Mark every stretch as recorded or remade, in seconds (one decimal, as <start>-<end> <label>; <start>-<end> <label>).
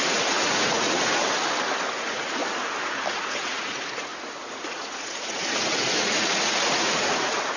0.0-1.2 remade; 1.2-1.8 recorded; 1.8-2.4 remade; 2.4-3.1 recorded; 3.1-7.6 remade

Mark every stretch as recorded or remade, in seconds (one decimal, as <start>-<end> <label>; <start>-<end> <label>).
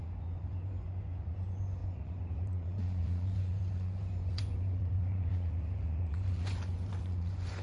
0.0-7.6 remade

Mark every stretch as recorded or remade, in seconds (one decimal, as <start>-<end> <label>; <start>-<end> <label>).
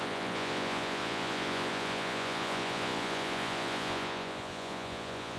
0.0-5.4 remade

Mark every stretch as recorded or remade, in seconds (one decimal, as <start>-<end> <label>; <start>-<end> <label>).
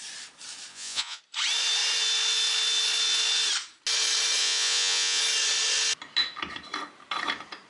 0.0-0.7 recorded; 0.7-1.2 remade; 1.2-4.4 recorded; 4.4-5.2 remade; 5.2-7.7 recorded